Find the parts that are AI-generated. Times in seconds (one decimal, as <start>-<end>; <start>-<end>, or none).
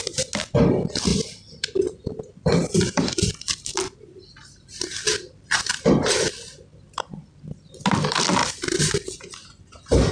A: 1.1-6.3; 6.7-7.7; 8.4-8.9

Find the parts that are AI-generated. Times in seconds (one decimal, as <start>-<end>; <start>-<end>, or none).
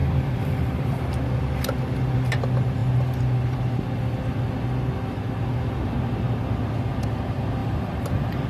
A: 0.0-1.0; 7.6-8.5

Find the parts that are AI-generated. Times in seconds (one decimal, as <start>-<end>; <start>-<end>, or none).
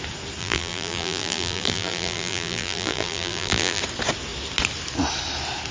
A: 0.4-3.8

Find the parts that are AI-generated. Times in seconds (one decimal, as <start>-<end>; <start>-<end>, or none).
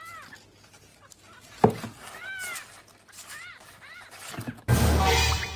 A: none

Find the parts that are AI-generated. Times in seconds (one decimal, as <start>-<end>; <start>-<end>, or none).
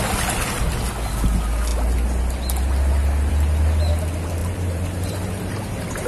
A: 4.4-6.1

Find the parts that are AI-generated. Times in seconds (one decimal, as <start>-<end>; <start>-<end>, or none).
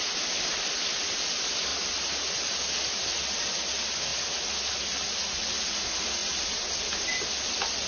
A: 1.7-2.6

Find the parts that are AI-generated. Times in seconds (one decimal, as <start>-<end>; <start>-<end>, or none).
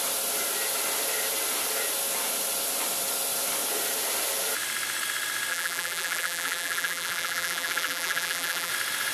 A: 5.5-8.7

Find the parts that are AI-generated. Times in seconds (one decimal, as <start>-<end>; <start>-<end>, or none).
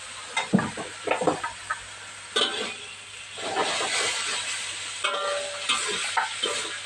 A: none